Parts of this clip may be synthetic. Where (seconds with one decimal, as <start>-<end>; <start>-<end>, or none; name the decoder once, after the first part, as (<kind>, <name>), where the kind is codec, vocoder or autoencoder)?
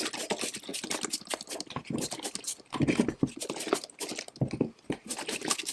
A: none